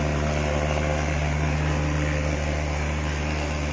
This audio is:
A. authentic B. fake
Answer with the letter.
A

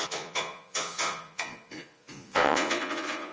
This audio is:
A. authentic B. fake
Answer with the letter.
B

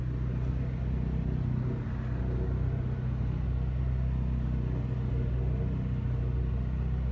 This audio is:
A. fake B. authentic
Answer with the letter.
B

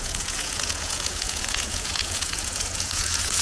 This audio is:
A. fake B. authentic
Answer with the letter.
A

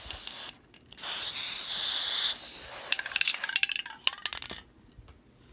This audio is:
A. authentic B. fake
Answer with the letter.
A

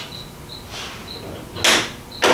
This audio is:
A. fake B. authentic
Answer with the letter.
B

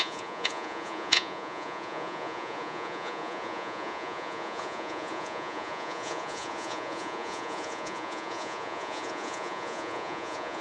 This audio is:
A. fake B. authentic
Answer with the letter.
A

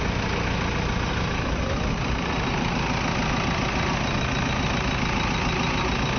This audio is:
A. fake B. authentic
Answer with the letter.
B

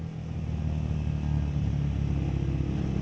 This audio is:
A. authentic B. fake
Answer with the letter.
A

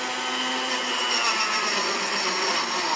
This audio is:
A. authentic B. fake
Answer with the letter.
A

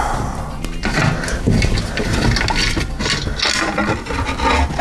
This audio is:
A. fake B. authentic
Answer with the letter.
B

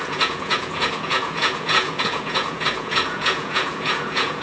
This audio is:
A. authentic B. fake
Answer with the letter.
B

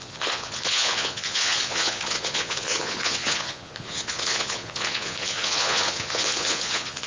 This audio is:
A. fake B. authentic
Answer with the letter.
A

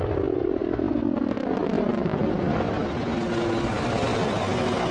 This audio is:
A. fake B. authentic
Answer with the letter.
B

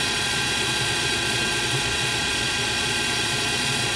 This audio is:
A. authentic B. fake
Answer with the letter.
B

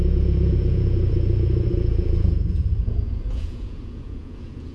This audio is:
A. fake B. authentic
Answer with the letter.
A